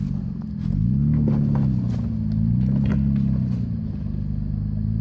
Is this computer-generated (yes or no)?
no